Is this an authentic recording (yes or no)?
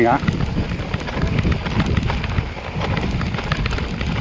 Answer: yes